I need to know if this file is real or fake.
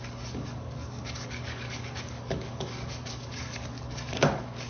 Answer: fake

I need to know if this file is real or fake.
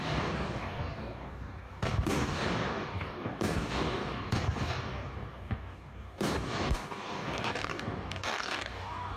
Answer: fake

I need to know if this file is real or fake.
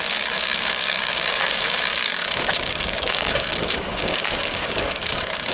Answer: fake